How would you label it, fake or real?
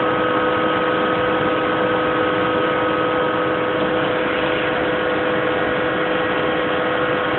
real